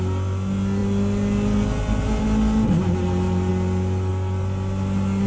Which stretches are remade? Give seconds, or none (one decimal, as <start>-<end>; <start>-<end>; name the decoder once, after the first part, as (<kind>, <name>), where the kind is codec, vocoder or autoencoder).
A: none